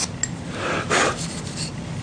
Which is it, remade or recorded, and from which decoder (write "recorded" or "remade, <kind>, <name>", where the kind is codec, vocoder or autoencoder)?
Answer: recorded